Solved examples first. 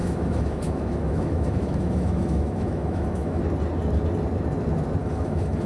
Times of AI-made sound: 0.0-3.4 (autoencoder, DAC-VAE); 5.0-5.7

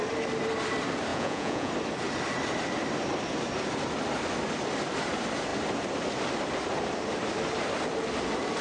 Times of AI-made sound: 1.1-1.7 (vocoder, Vocos)

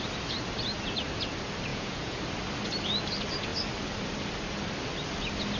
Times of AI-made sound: 1.7-2.2 (vocoder, Vocos)

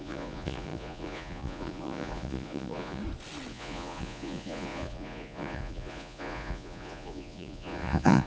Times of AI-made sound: 0.0-3.0 (vocoder, Vocos); 3.5-8.3

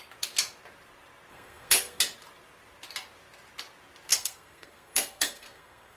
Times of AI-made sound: 1.3-2.0 (codec, SNAC); 4.1-6.0

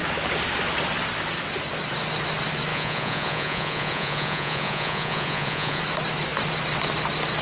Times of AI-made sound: 2.7-5.8 (vocoder, Vocos)